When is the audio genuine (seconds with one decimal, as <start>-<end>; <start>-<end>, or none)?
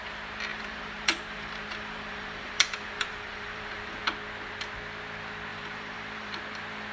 0.0-0.5; 4.0-5.5; 6.4-6.9